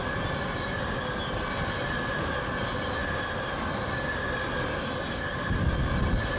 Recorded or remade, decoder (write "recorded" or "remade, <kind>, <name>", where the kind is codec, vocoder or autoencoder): recorded